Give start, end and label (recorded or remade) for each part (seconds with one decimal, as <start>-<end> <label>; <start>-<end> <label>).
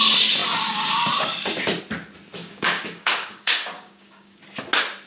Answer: 0.0-2.4 recorded; 2.4-4.4 remade; 4.4-5.1 recorded